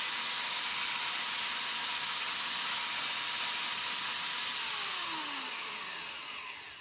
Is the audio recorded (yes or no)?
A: yes